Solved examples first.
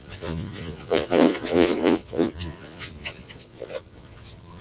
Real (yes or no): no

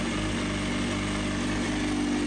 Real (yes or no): yes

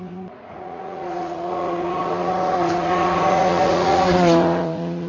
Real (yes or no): no